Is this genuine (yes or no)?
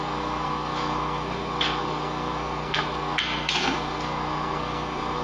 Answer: no